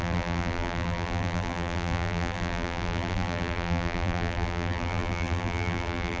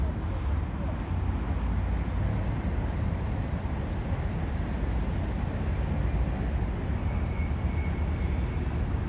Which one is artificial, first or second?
first